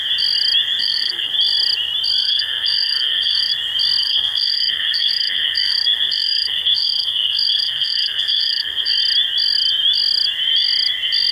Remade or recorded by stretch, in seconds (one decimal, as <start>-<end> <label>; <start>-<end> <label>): 0.0-0.8 recorded; 0.8-1.3 remade; 1.3-2.2 recorded; 2.2-3.5 remade; 3.5-4.0 recorded; 4.0-8.9 remade; 8.9-11.3 recorded